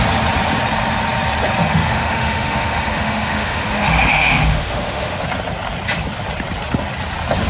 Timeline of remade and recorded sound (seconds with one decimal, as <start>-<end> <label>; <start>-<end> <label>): 0.0-1.6 recorded; 1.6-5.2 remade; 5.2-7.5 recorded